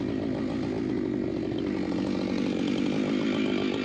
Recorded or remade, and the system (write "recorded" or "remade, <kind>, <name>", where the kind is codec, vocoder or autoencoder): recorded